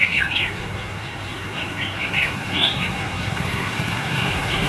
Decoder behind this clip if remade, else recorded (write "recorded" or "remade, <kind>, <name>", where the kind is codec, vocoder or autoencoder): remade, codec, SNAC